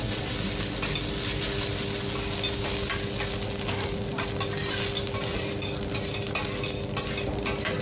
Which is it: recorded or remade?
recorded